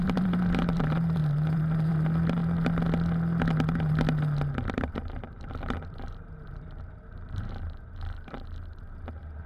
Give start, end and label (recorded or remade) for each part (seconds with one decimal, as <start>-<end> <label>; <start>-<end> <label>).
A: 0.0-2.4 remade; 2.4-4.7 recorded; 4.7-9.5 remade